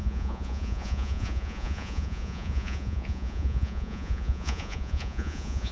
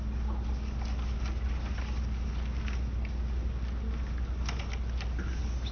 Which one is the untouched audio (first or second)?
second